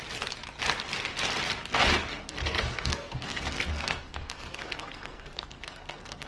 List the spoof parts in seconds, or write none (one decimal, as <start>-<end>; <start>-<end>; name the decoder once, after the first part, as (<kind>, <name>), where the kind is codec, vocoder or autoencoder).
2.1-6.3 (codec, SNAC)